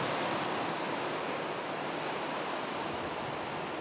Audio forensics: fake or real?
real